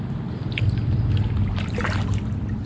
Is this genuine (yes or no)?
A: no